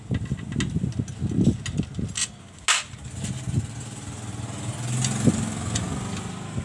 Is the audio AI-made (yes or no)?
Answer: no